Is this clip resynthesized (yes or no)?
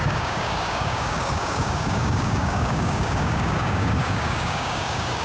yes